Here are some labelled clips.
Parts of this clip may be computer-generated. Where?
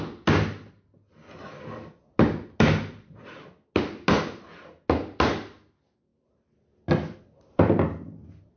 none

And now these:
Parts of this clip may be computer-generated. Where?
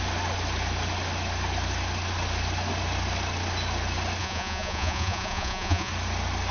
4.2-5.9 (vocoder, Vocos)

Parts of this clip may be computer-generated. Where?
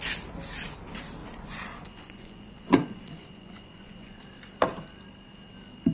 1.2-4.2 (vocoder, Vocos)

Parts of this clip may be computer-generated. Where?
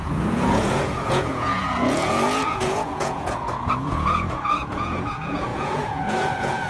0.0-6.7 (vocoder, Vocos)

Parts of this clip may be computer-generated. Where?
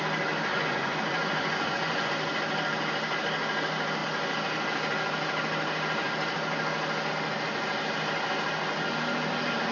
0.5-2.1 (vocoder, Vocos)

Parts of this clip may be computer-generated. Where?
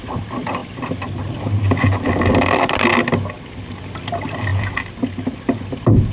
none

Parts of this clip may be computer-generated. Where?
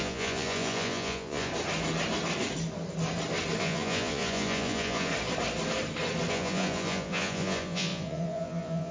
0.0-1.5 (vocoder, Vocos); 3.6-5.1; 6.3-8.9